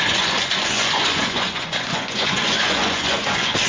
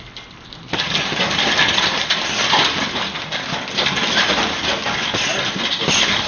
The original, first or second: second